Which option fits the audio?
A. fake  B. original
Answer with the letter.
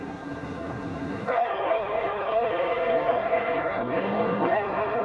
A